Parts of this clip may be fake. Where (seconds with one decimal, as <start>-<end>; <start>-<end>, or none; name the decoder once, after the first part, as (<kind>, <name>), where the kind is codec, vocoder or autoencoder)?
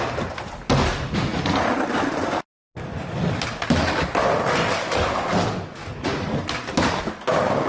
5.8-6.4 (vocoder, Vocos)